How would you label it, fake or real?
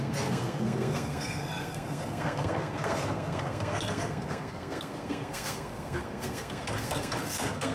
fake